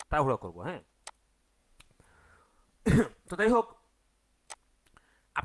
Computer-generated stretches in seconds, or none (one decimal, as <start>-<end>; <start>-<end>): 1.6-3.9